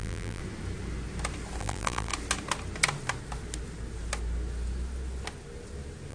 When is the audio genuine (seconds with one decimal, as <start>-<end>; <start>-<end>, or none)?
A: 0.4-1.6; 2.1-6.1